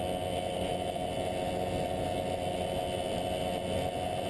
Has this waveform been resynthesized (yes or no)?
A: no